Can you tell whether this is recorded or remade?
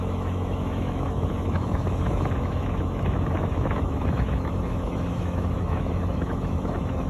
remade